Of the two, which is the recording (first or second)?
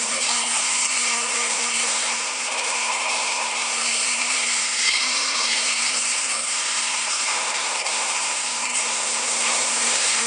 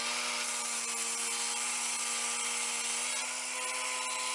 second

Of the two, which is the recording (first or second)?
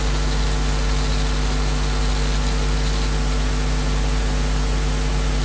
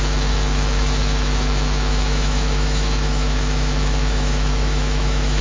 first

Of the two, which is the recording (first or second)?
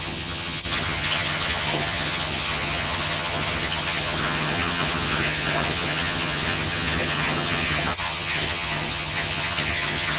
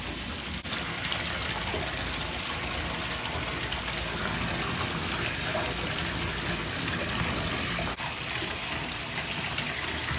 second